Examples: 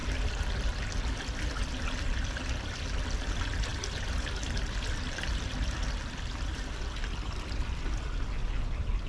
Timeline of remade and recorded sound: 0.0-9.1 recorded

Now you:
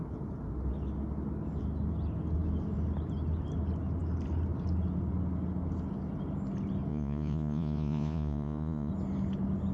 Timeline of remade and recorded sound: 0.0-6.9 recorded; 6.9-8.9 remade; 8.9-9.7 recorded

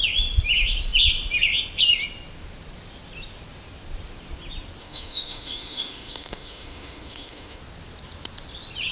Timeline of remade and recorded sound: 0.0-4.8 recorded; 4.8-7.6 remade; 7.6-8.9 recorded

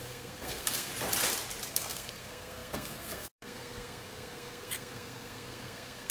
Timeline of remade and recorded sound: 0.0-0.9 remade; 0.9-1.7 recorded; 1.7-6.1 remade